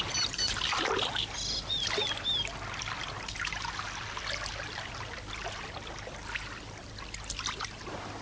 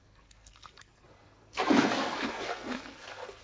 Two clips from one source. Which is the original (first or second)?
first